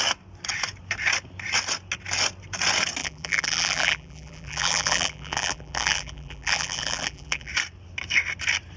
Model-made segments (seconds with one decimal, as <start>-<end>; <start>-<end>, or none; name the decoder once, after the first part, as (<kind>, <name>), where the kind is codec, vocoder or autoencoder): 3.0-7.5 (vocoder, BigVGAN v2)